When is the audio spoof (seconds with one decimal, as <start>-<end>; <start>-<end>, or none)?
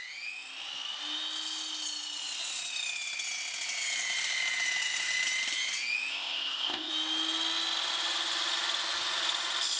6.1-6.9